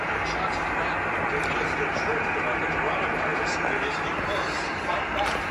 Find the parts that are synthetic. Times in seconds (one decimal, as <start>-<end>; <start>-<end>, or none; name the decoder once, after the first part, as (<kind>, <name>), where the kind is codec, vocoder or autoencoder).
none